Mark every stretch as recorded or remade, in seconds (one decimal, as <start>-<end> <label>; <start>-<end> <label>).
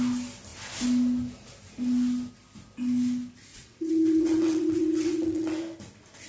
0.0-3.5 recorded; 3.5-5.6 remade; 5.6-6.3 recorded